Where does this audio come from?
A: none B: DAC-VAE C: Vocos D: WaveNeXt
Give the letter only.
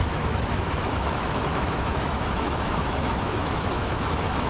B